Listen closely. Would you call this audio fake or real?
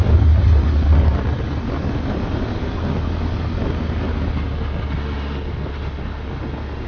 real